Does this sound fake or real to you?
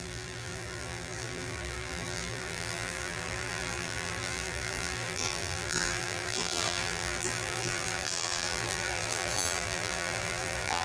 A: fake